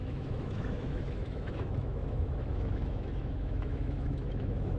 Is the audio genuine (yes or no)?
no